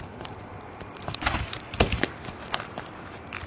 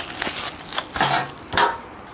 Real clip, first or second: second